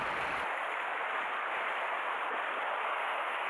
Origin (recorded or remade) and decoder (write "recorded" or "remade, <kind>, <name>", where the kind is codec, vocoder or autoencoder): recorded